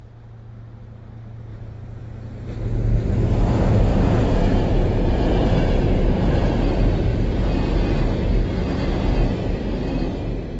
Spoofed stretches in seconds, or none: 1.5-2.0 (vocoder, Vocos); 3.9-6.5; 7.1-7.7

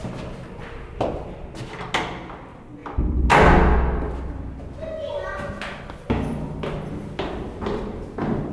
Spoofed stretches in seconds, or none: none

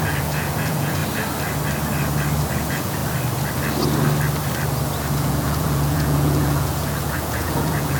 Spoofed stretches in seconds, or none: 0.0-1.0 (vocoder, Vocos); 2.5-3.0; 5.1-8.0

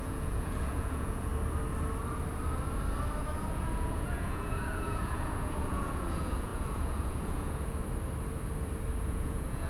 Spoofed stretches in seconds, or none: 0.0-1.3 (vocoder, Vocos); 3.5-7.8; 9.0-9.7

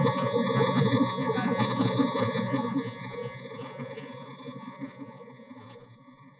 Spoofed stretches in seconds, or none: 0.0-6.4 (vocoder, Vocos)

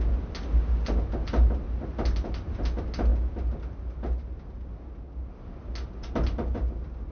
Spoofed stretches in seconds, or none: none

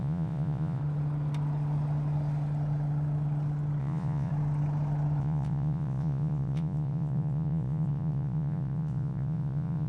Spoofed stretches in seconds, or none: 0.0-0.8 (vocoder, Vocos); 3.8-4.3; 5.2-9.9